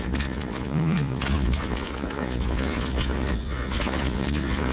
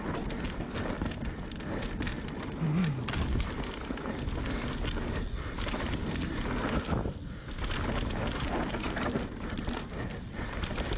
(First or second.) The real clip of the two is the second